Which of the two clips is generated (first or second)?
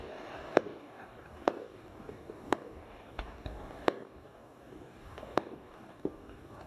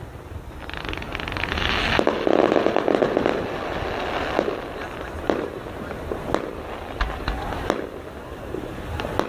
first